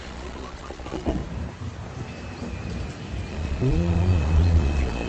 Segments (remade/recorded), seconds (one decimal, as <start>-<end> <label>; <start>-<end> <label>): 0.0-1.2 remade; 1.2-3.3 recorded; 3.3-5.1 remade